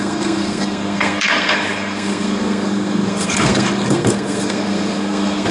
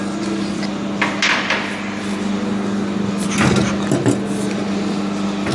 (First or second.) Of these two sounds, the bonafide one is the second